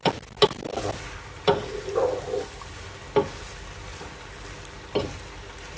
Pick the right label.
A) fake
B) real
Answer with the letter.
B